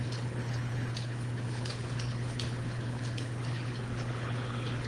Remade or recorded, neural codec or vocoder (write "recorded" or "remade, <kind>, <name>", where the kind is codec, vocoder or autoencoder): remade, codec, HILCodec